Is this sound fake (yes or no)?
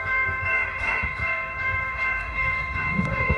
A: yes